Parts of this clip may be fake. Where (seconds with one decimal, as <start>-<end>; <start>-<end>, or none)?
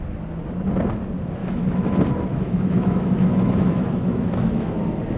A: 1.4-1.9; 2.3-4.8